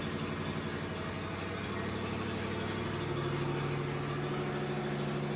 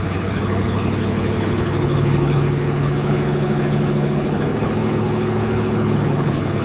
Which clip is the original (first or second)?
first